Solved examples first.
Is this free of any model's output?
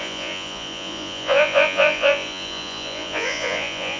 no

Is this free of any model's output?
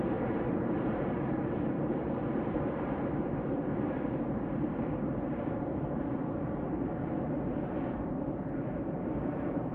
no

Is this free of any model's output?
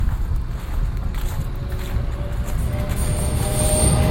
yes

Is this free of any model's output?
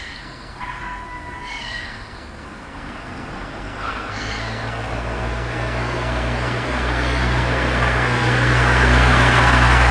no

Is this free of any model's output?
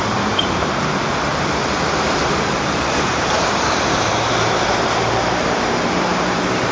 no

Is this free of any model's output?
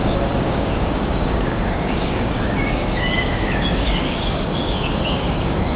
no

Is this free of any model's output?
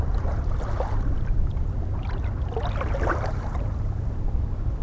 yes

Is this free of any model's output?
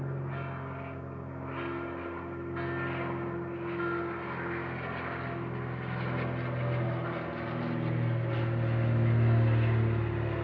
yes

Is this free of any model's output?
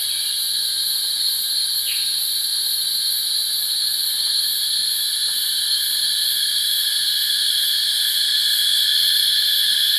yes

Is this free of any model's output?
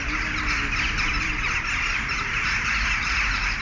yes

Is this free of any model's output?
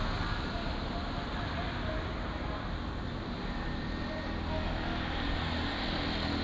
yes